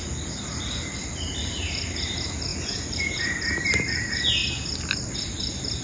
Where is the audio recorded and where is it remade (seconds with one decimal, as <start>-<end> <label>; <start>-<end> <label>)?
0.0-0.6 recorded; 0.6-4.4 remade; 4.4-5.0 recorded; 5.0-5.8 remade